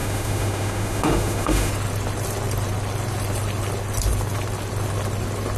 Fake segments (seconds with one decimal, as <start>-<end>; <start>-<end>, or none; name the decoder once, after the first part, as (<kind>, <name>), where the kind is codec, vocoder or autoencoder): 0.0-1.7 (autoencoder, DAC-VAE)